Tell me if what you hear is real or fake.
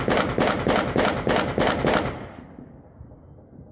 real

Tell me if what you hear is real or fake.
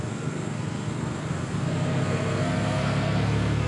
fake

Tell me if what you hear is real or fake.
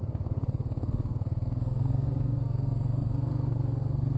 fake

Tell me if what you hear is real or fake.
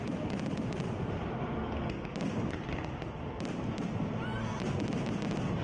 real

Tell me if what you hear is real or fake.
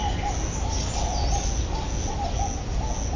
real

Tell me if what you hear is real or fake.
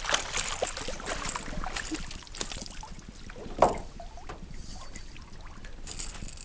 real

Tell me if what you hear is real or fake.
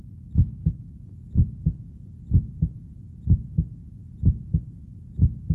real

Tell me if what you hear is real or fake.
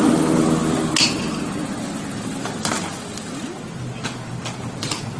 real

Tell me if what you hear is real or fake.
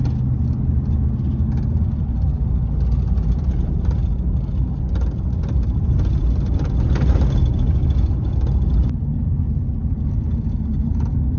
real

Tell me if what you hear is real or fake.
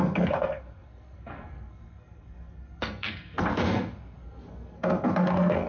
fake